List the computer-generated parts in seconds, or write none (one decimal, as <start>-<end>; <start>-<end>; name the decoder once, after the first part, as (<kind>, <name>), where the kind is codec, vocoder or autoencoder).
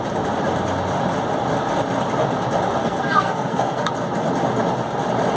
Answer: 2.8-3.9 (codec, SNAC)